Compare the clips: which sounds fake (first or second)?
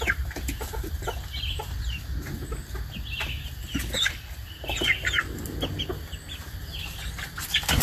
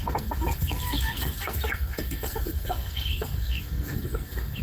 second